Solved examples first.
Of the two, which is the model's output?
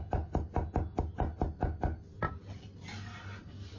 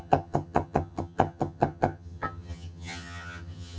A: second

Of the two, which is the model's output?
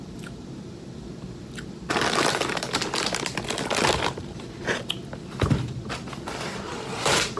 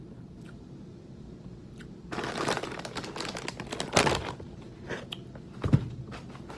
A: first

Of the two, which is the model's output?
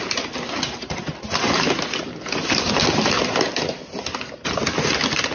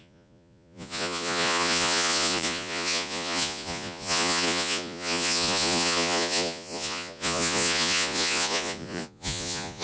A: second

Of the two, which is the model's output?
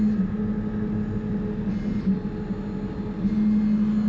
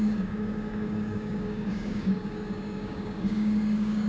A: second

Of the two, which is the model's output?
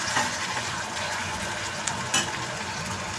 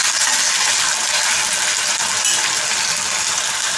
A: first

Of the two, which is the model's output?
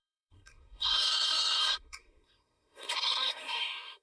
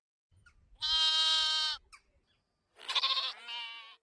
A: first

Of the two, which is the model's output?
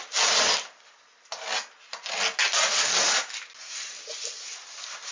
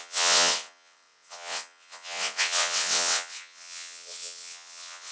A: second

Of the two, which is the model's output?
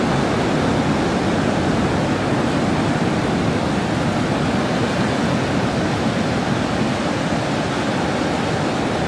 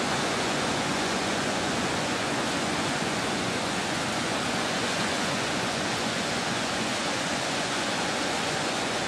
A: second